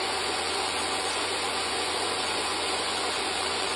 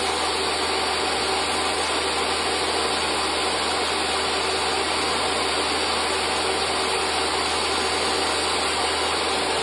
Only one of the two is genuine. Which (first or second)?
second